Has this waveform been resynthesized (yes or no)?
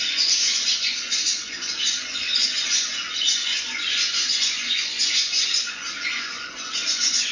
yes